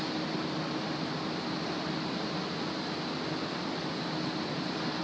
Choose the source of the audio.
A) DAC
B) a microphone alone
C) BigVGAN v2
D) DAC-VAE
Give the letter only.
B